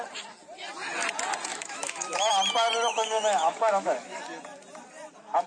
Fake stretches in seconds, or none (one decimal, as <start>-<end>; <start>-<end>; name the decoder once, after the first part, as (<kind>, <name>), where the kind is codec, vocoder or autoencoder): 1.5-2.3 (autoencoder, DAC-VAE); 2.9-4.2